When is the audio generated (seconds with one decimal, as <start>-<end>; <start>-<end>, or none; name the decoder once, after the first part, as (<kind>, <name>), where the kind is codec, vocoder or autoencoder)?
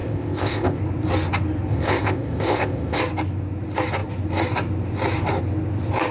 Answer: 0.0-0.8 (codec, ZipCodec); 1.7-3.0